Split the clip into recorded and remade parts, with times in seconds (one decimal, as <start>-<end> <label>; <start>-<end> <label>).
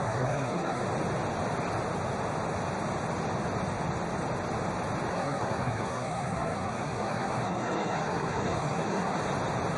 0.0-0.8 remade; 0.8-5.1 recorded; 5.1-9.2 remade; 9.2-9.8 recorded